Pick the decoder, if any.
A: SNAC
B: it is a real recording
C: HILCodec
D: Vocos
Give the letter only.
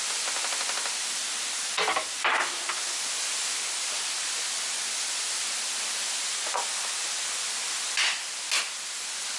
B